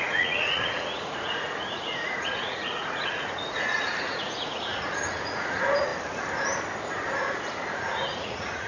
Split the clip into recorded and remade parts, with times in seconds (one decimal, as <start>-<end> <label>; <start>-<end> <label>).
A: 0.0-5.9 remade; 5.9-7.7 recorded; 7.7-8.7 remade